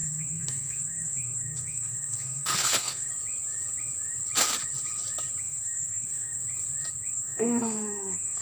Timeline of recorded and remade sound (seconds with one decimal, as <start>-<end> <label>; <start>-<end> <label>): 0.0-3.1 remade; 3.1-5.4 recorded; 5.4-6.4 remade; 6.4-7.1 recorded; 7.1-8.4 remade